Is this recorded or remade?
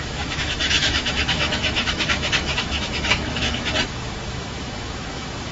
remade